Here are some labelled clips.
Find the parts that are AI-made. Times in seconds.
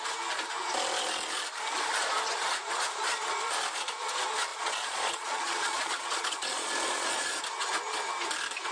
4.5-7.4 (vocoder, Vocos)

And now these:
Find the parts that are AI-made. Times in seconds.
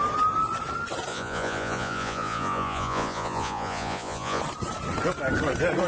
1.1-4.4 (vocoder, Vocos)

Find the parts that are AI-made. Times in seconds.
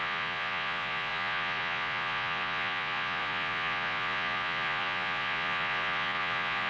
0.0-6.7 (vocoder, Vocos)